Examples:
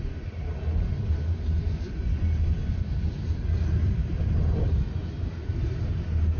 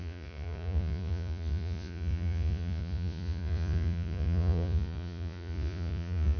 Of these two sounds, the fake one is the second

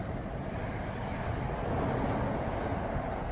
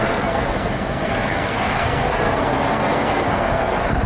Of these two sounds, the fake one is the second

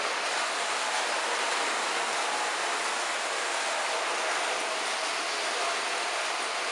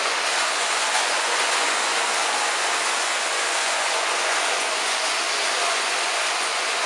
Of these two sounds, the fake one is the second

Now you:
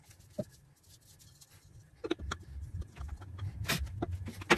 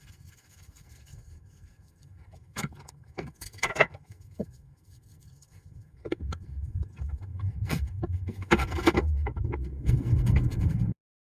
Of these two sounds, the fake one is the second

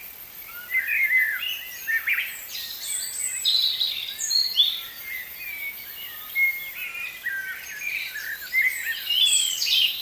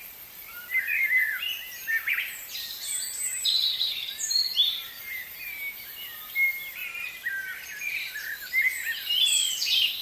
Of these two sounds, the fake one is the second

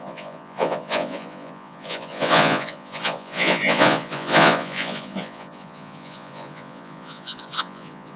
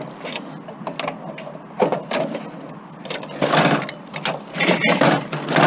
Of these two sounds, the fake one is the first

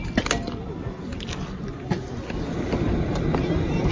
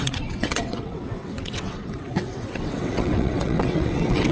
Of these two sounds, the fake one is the second